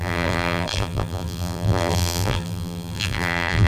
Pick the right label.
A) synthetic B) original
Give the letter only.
A